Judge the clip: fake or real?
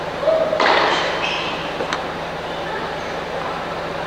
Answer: fake